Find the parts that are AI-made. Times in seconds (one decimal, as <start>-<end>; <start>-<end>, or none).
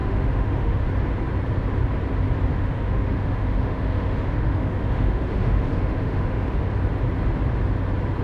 0.0-0.8; 2.5-6.6